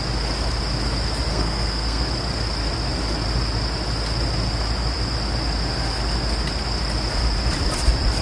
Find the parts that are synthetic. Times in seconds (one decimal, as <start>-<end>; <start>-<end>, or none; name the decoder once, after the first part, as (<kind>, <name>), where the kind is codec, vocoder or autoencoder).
1.3-2.1 (codec, SNAC)